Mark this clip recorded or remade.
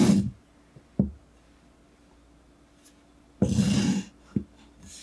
recorded